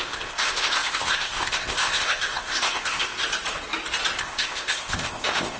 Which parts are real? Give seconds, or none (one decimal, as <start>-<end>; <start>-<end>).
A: 3.2-4.2